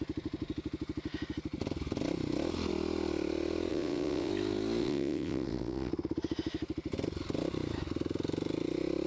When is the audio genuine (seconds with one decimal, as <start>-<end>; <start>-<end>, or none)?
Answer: 0.0-3.7; 4.3-4.8; 5.9-9.1